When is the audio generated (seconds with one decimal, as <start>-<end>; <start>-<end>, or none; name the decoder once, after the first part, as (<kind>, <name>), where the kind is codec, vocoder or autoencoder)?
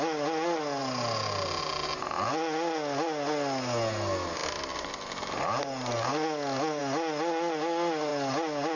none